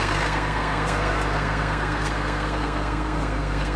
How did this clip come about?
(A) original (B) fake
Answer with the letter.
B